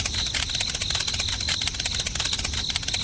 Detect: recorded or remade recorded